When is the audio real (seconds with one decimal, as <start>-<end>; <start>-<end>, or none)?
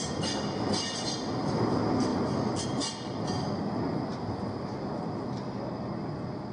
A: 0.0-6.5